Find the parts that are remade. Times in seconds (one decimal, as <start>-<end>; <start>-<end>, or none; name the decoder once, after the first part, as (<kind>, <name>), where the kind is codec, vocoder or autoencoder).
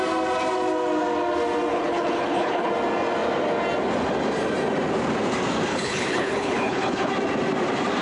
1.7-2.7 (codec, HILCodec); 5.7-7.1